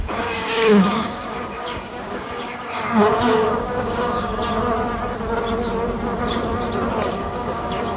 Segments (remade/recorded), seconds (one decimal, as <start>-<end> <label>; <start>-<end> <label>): 0.0-4.4 remade; 4.4-7.1 recorded; 7.1-8.0 remade